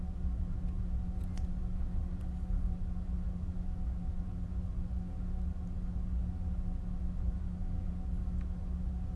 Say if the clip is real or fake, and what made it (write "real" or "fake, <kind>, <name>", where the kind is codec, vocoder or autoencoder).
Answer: real